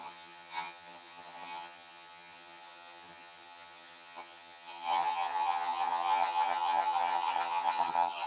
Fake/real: fake